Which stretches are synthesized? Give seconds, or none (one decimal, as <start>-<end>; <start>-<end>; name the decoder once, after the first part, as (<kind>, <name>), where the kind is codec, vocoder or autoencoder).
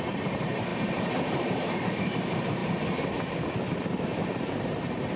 0.0-2.6 (vocoder, BigVGAN v2); 3.8-5.2